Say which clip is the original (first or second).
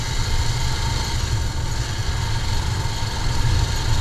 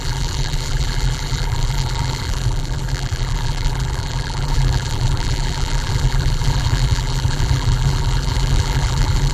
first